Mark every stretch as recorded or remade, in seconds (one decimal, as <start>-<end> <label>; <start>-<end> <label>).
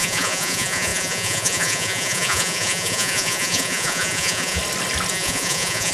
0.0-4.6 remade; 4.6-5.1 recorded; 5.1-5.9 remade